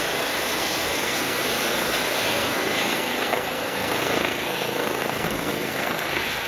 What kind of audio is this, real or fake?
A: fake